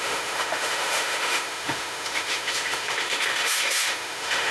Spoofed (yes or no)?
yes